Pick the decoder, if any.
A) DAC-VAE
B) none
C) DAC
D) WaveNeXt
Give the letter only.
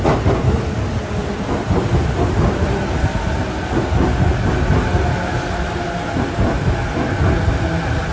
B